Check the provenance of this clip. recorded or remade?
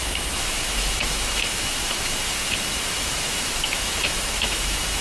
remade